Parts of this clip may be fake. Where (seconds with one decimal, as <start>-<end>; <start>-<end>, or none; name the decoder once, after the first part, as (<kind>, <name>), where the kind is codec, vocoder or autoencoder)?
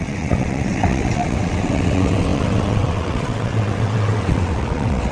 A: 0.0-5.1 (vocoder, WaveNeXt)